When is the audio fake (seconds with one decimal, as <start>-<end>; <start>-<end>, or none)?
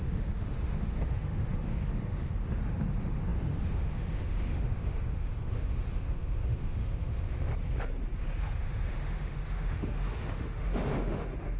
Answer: 0.0-7.5; 8.2-11.6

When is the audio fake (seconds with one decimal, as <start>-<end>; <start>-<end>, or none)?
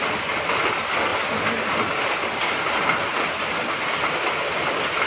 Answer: none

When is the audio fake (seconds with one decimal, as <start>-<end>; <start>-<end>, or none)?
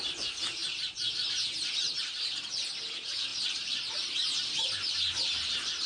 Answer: none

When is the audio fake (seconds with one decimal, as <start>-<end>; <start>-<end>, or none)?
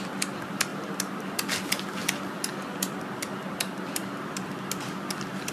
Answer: none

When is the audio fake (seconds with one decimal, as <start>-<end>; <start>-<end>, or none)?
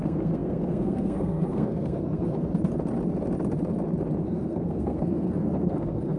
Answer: 0.0-2.5; 4.2-6.2